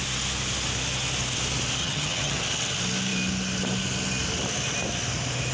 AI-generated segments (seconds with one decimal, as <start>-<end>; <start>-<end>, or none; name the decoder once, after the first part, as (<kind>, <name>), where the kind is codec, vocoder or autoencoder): 1.8-2.4 (vocoder, HiFi-GAN)